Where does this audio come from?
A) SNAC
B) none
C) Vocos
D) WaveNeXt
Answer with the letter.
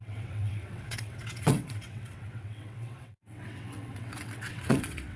D